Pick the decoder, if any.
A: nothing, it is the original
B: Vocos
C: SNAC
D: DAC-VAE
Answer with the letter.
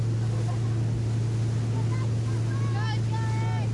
A